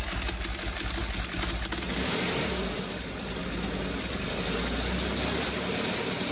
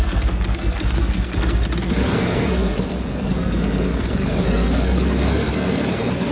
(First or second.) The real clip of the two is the first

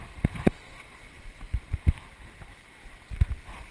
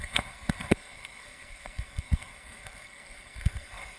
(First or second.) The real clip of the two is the first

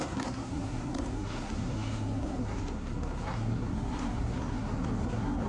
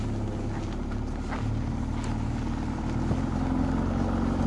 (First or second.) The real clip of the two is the second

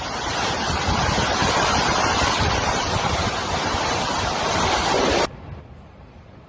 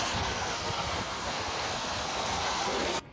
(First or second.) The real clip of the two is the first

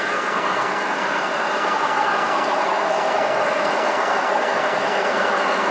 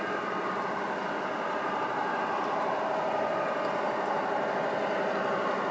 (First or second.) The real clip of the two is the second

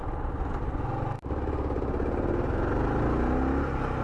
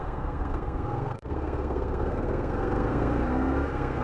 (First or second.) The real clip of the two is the first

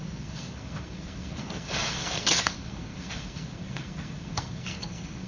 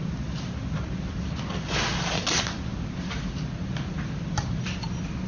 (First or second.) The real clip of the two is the second